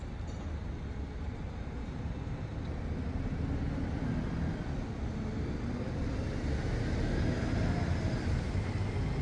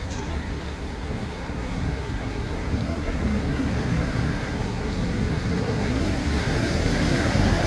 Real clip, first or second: first